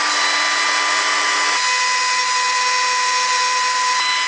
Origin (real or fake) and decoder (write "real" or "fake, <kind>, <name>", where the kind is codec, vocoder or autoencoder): real